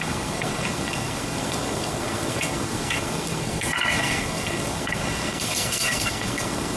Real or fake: fake